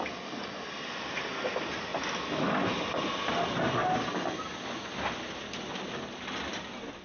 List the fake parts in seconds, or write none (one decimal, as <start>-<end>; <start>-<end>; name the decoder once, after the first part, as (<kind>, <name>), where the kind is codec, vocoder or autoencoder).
none